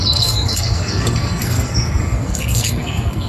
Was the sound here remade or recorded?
remade